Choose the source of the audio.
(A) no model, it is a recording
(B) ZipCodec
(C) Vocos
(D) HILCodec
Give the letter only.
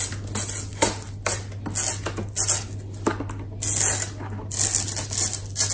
A